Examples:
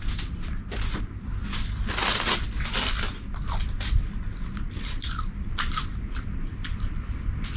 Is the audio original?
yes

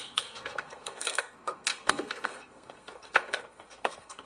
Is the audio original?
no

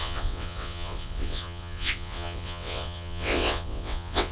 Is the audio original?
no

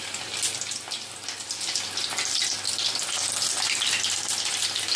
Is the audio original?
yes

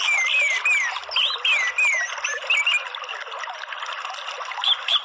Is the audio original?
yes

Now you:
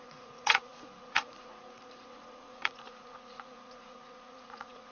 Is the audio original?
no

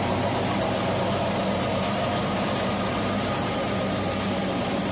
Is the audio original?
no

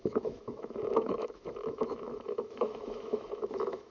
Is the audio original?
no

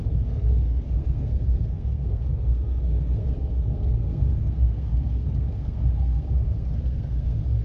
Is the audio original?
no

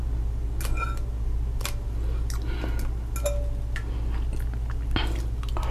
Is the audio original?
yes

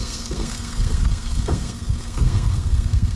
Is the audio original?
no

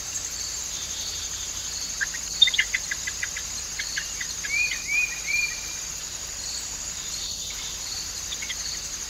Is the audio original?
no